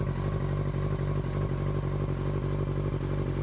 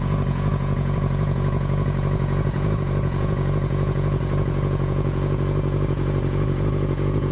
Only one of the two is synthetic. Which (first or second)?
second